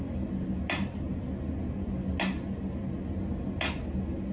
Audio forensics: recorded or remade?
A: recorded